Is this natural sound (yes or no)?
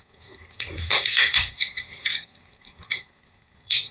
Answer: no